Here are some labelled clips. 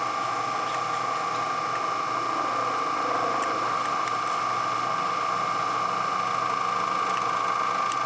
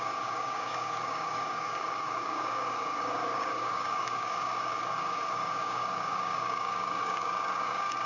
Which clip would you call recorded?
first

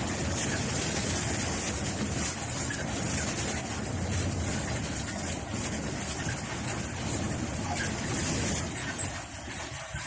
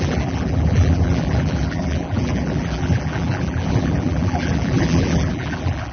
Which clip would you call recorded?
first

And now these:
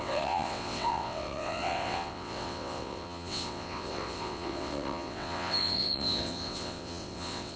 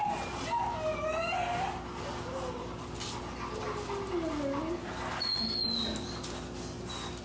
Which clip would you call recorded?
second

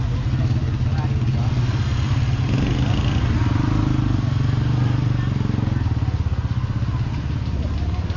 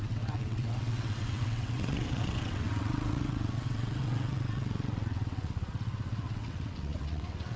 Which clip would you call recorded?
first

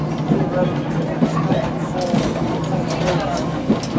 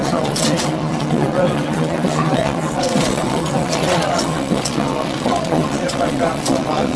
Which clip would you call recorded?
first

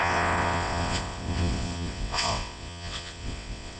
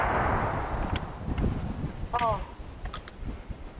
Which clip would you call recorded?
second